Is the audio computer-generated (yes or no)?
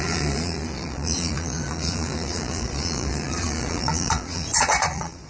yes